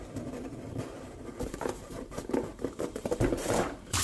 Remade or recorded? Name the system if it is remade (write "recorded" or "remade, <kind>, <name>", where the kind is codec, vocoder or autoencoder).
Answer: remade, vocoder, BigVGAN v2